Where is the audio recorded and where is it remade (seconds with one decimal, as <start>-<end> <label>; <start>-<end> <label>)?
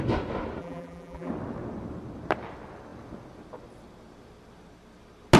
0.0-0.6 recorded; 0.6-1.3 remade; 1.3-5.4 recorded